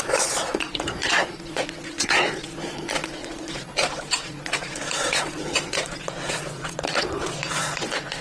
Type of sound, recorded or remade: remade